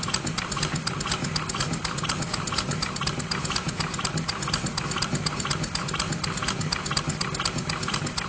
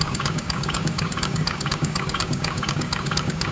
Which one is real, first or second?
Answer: first